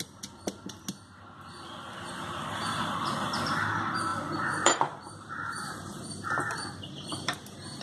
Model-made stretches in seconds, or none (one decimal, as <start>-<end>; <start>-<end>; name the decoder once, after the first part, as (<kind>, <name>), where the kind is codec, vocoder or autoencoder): 4.1-7.8 (vocoder, BigVGAN v2)